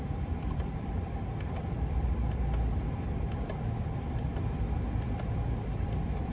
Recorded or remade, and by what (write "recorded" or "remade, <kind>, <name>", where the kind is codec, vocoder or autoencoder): remade, vocoder, BigVGAN v2